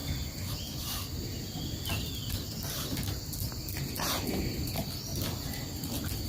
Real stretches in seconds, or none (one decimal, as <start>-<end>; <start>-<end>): 0.0-5.1; 5.7-6.3